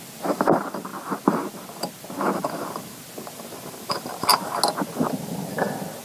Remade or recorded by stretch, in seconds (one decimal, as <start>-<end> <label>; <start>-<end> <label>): 0.0-6.0 recorded